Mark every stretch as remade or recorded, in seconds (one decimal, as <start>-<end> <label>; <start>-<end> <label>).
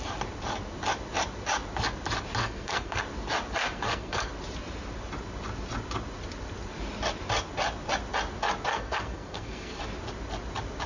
0.0-2.4 recorded; 2.4-3.0 remade; 3.0-3.6 recorded; 3.6-4.3 remade; 4.3-8.7 recorded; 8.7-9.8 remade; 9.8-10.9 recorded